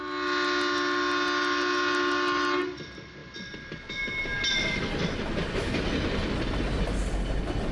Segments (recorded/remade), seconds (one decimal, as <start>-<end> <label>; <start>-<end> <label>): 0.0-7.7 recorded